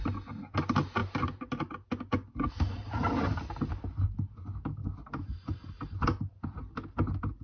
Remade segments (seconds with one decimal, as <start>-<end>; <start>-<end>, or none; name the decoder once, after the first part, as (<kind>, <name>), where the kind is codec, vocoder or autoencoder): 4.8-6.1 (vocoder, BigVGAN v2)